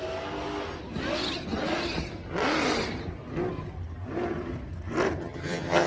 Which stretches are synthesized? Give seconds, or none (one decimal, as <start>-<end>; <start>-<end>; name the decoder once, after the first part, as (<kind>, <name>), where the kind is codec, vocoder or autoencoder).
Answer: 5.2-5.9 (vocoder, HiFi-GAN)